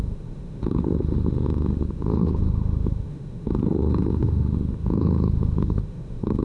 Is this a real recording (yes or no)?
no